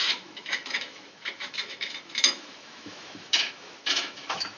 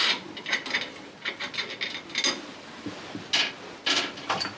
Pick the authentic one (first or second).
second